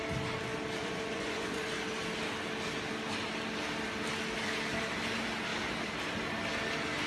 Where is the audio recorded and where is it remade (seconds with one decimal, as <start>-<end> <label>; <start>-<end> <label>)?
0.0-0.8 recorded; 0.8-1.7 remade; 1.7-7.1 recorded